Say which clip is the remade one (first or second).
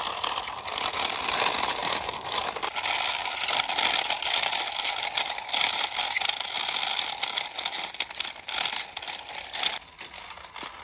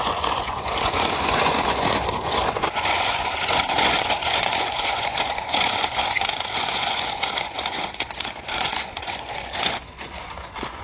second